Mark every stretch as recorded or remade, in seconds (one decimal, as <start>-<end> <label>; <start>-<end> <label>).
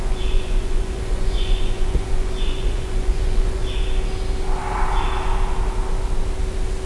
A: 0.0-3.6 remade; 3.6-6.9 recorded